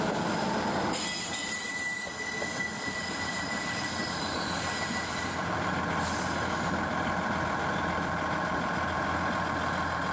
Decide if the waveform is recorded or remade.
recorded